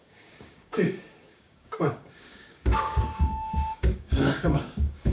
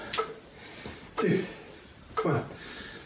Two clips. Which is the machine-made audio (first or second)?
first